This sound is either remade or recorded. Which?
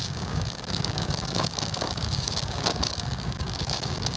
remade